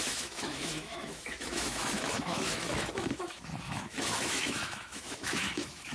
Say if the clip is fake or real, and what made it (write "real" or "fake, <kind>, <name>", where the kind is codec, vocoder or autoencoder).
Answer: fake, autoencoder, DAC-VAE